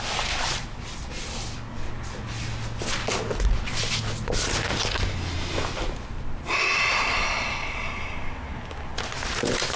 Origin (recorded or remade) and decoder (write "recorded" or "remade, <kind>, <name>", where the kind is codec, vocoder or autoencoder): recorded